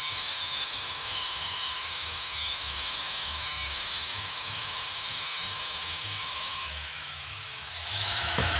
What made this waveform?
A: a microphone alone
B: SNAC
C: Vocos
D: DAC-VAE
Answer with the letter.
D